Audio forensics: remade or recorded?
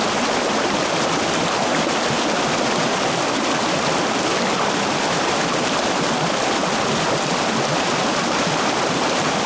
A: recorded